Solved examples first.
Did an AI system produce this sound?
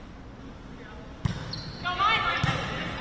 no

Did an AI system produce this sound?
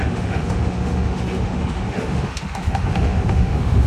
yes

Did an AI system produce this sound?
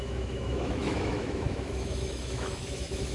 yes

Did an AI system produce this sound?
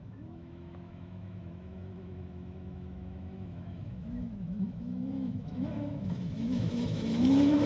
yes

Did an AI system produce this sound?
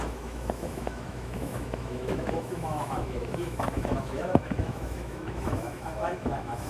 yes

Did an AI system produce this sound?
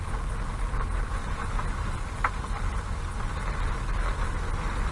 no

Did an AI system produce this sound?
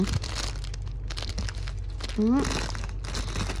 no